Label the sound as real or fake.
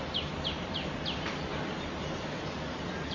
real